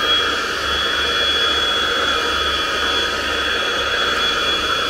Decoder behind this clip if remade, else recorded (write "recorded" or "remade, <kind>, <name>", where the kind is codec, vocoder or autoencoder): recorded